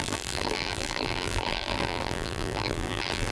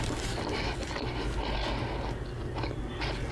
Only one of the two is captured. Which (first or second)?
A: second